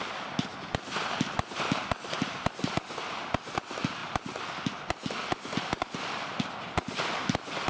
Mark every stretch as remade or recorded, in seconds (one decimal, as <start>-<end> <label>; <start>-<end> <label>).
0.0-7.7 recorded